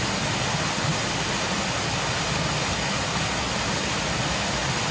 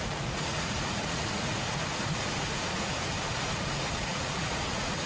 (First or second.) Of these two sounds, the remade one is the second